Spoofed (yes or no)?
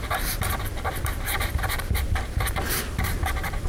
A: yes